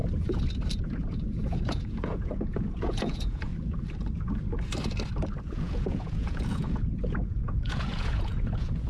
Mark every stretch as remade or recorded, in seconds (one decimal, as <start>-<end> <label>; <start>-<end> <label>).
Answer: 0.0-0.8 recorded; 0.8-3.5 remade; 3.5-5.4 recorded; 5.4-8.9 remade